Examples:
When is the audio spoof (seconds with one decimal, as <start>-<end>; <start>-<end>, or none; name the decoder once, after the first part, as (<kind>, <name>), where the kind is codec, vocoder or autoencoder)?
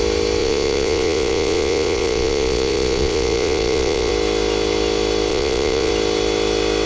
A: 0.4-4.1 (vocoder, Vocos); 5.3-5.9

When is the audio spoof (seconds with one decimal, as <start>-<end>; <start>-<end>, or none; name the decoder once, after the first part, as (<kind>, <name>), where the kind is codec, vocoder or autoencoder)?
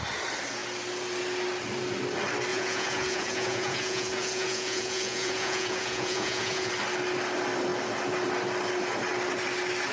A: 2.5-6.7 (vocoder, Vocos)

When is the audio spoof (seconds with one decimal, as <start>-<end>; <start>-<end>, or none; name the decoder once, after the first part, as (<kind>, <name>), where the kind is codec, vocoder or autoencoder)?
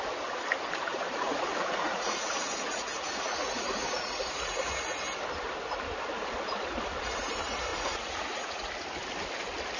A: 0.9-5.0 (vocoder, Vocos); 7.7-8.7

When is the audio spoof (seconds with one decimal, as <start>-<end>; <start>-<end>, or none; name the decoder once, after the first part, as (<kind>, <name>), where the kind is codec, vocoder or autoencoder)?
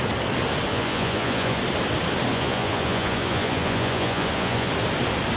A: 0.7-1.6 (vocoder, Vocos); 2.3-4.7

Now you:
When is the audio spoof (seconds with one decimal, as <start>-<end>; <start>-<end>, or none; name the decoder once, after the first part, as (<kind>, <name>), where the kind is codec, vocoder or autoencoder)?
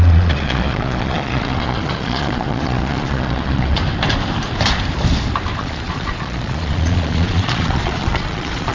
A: 0.0-3.8 (vocoder, Vocos); 5.6-8.7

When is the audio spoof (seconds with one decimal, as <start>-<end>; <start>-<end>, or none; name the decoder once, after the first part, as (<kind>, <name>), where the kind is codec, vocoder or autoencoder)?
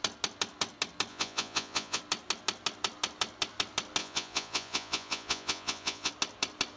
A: 1.1-2.0 (vocoder, Vocos); 4.0-6.1